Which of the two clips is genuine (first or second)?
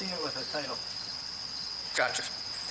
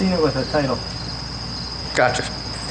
second